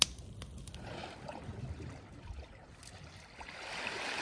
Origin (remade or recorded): recorded